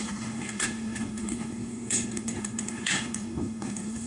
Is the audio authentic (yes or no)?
no